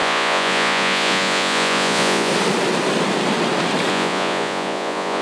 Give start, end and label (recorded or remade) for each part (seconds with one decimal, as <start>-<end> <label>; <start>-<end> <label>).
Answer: 0.0-2.3 remade; 2.3-3.9 recorded; 3.9-5.2 remade